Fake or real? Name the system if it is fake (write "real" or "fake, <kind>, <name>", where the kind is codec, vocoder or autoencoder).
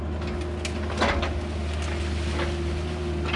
real